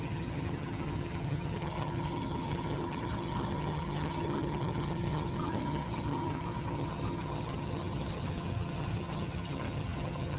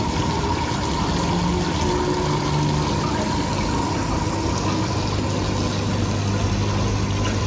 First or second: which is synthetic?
first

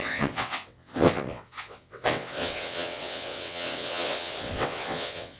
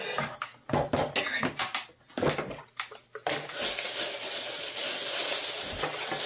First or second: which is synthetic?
first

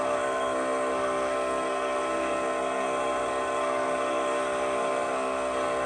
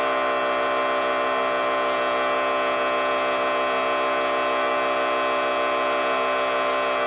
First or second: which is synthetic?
first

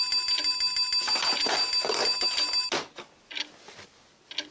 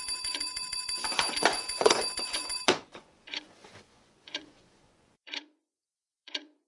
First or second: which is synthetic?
second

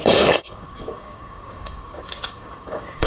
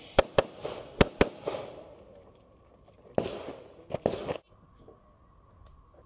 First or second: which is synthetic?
first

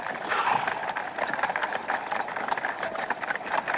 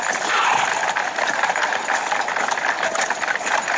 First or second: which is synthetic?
first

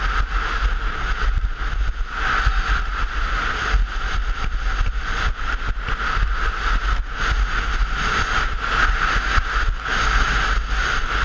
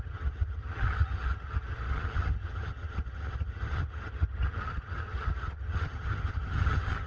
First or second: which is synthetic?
second